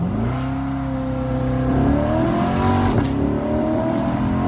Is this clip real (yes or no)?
yes